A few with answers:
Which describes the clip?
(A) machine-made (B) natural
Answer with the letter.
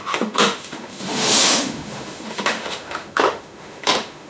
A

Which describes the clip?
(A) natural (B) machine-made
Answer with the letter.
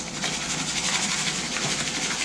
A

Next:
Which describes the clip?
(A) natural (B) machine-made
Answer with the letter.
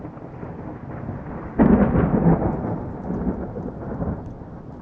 A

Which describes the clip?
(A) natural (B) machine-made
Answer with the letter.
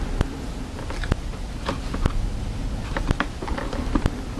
A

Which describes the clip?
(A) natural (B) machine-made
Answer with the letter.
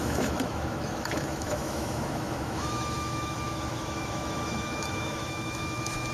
B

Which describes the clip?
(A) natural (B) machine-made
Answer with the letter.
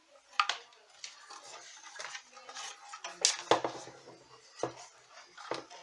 A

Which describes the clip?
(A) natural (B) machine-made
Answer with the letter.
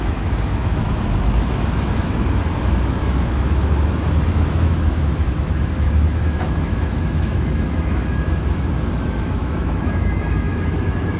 B